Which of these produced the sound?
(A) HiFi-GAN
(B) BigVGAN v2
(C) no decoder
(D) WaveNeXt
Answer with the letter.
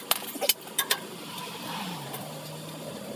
B